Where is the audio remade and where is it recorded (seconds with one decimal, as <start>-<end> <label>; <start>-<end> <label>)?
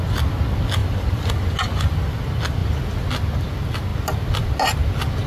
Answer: 0.0-5.3 recorded